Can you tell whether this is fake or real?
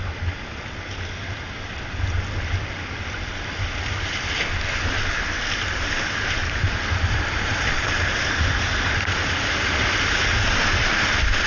real